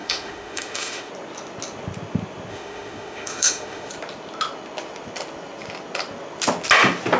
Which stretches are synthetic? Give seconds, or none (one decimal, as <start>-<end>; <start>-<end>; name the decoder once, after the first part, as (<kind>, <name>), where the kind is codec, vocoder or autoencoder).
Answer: 0.0-1.1 (autoencoder, DAC-VAE); 2.5-3.9